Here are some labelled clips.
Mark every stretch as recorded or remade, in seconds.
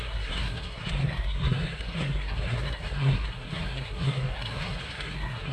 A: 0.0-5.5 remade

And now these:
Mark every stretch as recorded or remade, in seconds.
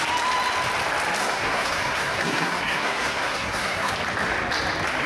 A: 0.0-1.2 recorded; 1.2-3.9 remade; 3.9-5.1 recorded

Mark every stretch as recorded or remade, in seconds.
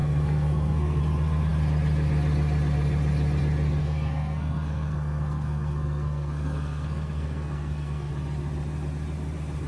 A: 0.0-1.0 remade; 1.0-3.8 recorded; 3.8-8.1 remade; 8.1-9.7 recorded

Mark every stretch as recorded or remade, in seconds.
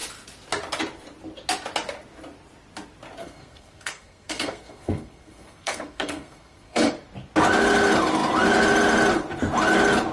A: 0.0-3.2 recorded; 3.2-6.9 remade; 6.9-10.1 recorded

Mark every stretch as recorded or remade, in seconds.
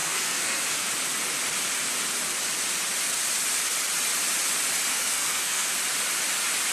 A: 0.0-0.9 remade; 0.9-4.9 recorded; 4.9-5.7 remade; 5.7-6.7 recorded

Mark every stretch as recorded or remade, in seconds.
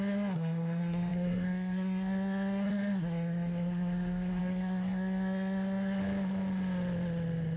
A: 0.0-6.0 remade; 6.0-7.6 recorded